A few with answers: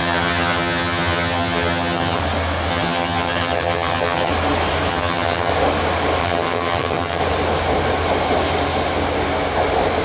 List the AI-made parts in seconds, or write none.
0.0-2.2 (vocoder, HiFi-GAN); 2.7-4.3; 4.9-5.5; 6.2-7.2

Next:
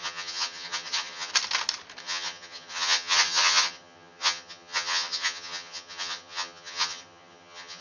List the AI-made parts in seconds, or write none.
0.0-1.3 (vocoder, HiFi-GAN); 2.0-7.8

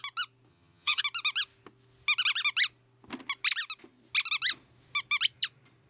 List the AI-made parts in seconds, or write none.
0.5-1.0 (vocoder, HiFi-GAN)

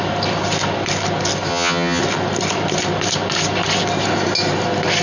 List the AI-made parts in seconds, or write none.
1.5-2.0 (vocoder, HiFi-GAN)

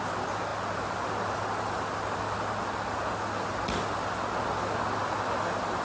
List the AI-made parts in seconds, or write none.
none

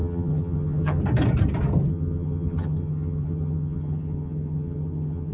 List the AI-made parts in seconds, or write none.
0.0-1.0 (vocoder, HiFi-GAN); 1.9-5.3